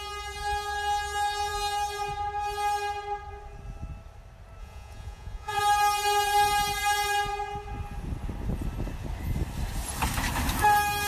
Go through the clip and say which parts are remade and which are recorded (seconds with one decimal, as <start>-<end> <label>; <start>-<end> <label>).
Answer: 0.0-4.6 recorded; 4.6-5.6 remade; 5.6-11.1 recorded